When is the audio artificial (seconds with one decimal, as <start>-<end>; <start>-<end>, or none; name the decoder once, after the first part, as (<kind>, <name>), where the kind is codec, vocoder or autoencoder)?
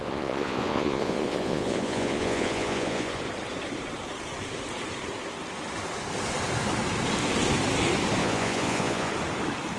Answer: 0.0-3.2 (vocoder, Vocos); 8.2-9.1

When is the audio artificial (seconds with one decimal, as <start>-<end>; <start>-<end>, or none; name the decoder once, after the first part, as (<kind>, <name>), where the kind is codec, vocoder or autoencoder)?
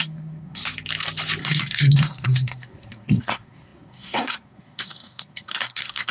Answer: 0.0-0.6 (codec, SNAC); 1.4-6.1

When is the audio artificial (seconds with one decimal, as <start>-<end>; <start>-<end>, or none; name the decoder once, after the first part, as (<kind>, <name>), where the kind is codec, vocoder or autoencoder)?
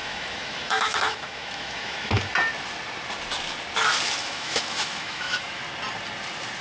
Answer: 0.0-2.2 (autoencoder, DAC-VAE); 4.2-5.6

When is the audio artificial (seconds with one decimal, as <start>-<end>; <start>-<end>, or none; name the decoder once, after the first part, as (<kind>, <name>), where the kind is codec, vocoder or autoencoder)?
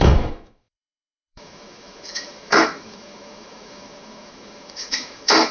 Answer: 0.0-5.5 (autoencoder, DAC-VAE)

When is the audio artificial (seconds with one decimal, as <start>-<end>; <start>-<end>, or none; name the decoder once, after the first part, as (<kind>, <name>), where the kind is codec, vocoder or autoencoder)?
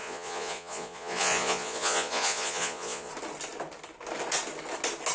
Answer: 0.0-3.1 (vocoder, Vocos)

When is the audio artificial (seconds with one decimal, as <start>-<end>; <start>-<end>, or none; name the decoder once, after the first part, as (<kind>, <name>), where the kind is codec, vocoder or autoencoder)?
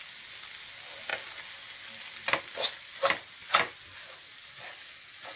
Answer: none